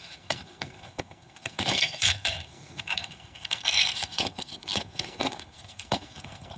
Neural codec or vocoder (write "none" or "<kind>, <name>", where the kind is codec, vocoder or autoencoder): codec, SNAC